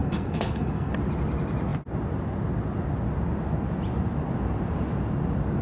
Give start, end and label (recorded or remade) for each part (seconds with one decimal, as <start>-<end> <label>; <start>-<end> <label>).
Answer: 0.0-0.9 remade; 0.9-5.6 recorded